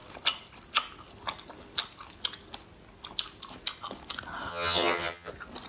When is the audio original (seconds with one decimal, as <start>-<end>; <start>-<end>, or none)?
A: 0.0-4.5; 5.3-5.7